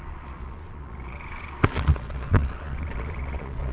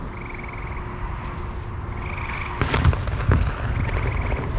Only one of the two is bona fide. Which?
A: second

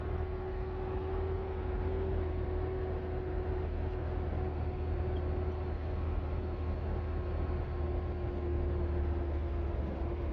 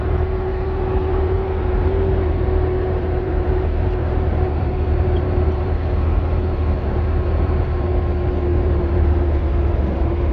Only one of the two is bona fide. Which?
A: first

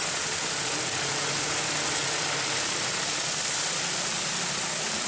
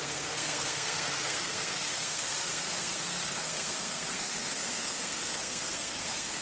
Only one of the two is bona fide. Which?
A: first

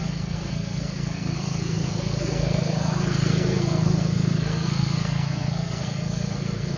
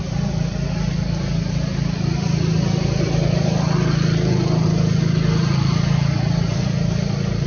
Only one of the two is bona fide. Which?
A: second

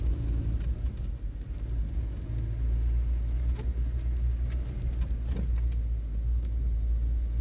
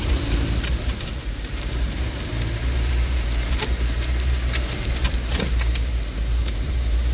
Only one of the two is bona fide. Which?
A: first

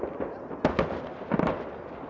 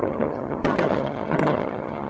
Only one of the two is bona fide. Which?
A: first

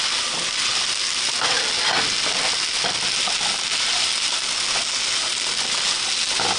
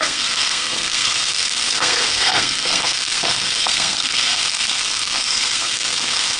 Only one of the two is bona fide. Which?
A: first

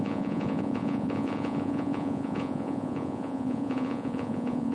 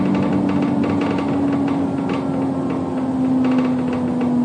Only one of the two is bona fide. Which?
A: second